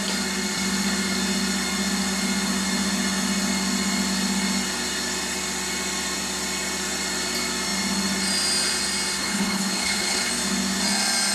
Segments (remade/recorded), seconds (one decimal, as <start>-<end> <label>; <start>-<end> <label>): 0.0-9.2 recorded; 9.2-10.3 remade; 10.3-11.3 recorded